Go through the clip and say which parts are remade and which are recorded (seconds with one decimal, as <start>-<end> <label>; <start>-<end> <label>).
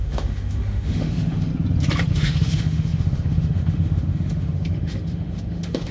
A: 0.0-1.5 remade; 1.5-2.1 recorded; 2.1-5.9 remade